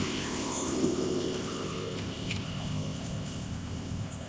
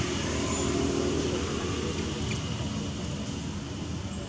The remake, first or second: first